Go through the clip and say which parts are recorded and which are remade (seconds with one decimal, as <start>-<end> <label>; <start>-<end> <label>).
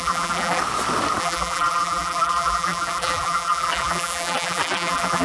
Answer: 0.0-0.6 remade; 0.6-1.2 recorded; 1.2-5.2 remade